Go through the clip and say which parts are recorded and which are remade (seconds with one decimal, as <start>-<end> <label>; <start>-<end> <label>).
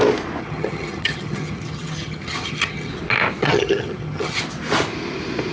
0.0-0.4 recorded; 0.4-2.9 remade; 2.9-3.4 recorded; 3.4-4.4 remade; 4.4-5.5 recorded